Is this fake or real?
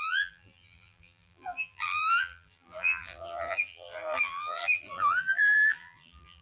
fake